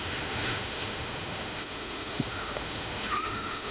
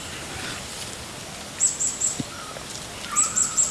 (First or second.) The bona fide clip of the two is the second